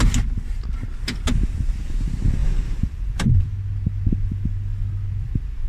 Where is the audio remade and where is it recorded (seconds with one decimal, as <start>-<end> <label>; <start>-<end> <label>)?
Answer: 0.0-2.4 recorded; 2.4-3.3 remade; 3.3-5.7 recorded